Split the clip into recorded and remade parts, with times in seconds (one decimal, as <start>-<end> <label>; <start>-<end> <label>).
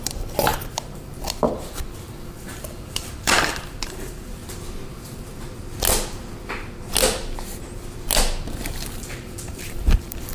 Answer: 0.0-4.4 remade; 4.4-9.0 recorded; 9.0-10.3 remade